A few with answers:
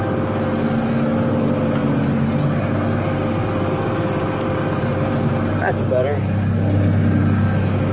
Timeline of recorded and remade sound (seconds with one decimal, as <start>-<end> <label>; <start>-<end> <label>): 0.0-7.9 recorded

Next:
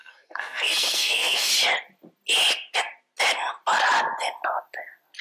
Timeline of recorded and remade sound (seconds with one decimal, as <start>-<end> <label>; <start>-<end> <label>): 0.0-1.5 remade; 1.5-5.2 recorded

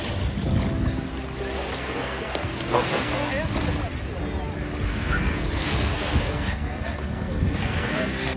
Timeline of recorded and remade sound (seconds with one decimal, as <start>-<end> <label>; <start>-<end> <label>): 0.0-1.8 recorded; 1.8-3.3 remade; 3.3-4.9 recorded; 4.9-8.4 remade

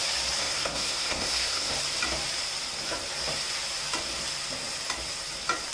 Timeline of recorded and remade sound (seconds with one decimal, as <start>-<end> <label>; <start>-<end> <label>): 0.0-0.4 recorded; 0.4-1.7 remade; 1.7-5.7 recorded